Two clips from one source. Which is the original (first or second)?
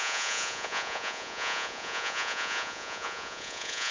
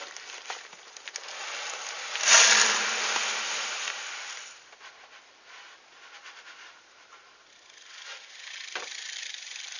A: second